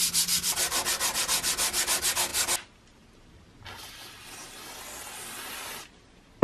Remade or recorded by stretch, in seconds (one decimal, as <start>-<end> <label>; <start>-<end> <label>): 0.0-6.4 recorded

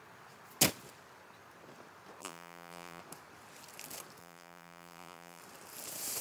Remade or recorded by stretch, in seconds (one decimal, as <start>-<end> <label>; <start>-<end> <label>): 0.0-2.2 recorded; 2.2-3.0 remade; 3.0-4.2 recorded; 4.2-5.4 remade; 5.4-6.2 recorded

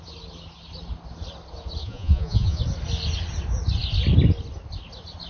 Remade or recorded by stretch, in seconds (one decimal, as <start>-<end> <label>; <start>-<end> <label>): 0.0-1.8 recorded; 1.8-2.6 remade; 2.6-5.3 recorded

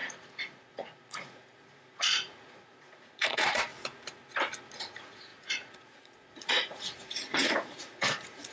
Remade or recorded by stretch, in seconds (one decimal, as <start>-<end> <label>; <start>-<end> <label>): 0.0-3.7 remade; 3.7-4.8 recorded; 4.8-8.5 remade